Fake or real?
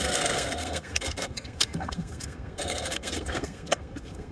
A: fake